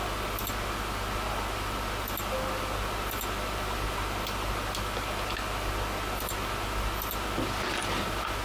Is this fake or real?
real